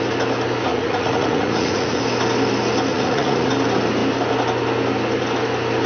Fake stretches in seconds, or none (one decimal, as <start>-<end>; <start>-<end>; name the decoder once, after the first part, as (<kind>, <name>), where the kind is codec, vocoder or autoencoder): 0.7-2.0 (vocoder, Vocos); 2.9-3.5